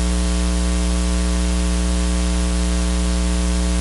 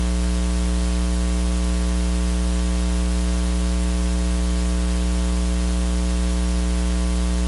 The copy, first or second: first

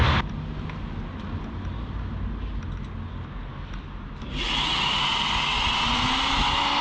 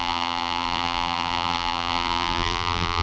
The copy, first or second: second